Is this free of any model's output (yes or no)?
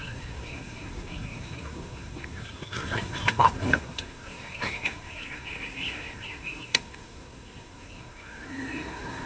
no